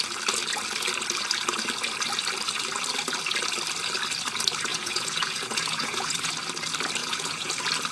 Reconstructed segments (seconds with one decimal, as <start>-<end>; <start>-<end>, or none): 4.7-6.3; 7.0-7.5